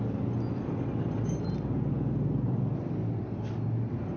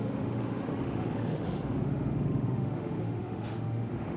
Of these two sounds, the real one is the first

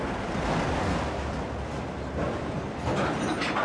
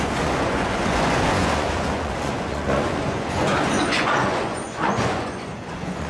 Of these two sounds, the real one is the first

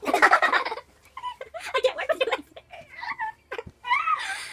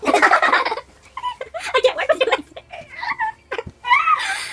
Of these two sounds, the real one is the second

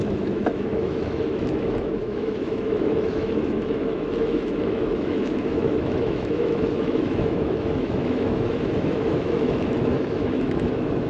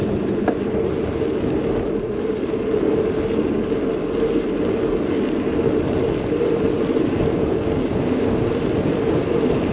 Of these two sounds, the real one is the second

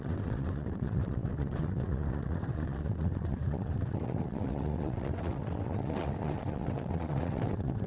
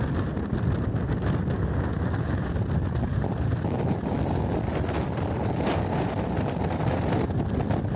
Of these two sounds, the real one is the second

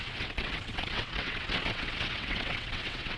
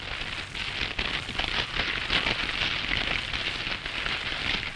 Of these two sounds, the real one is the second